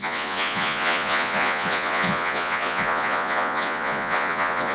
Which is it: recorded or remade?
remade